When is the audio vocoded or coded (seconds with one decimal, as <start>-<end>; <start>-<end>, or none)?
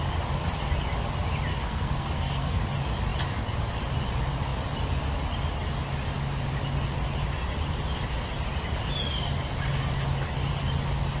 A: 1.5-2.6